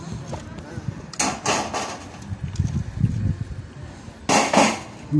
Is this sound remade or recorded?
recorded